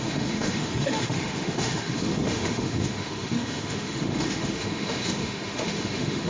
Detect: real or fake fake